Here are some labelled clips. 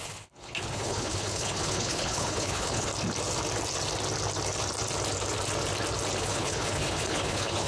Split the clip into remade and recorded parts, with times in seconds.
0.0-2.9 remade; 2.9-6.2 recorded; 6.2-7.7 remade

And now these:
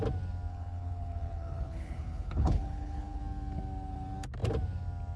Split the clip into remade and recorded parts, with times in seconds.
0.0-0.5 recorded; 0.5-3.2 remade; 3.2-5.2 recorded